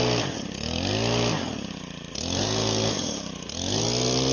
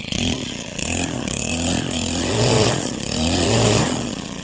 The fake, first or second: second